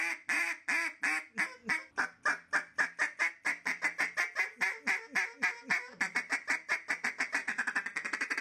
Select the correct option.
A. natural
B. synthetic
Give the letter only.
A